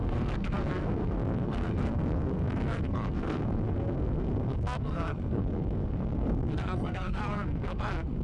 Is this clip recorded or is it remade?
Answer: remade